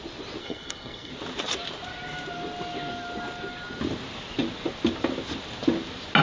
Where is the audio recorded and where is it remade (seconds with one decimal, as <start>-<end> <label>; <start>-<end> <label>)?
0.0-0.4 recorded; 0.4-1.1 remade; 1.1-6.2 recorded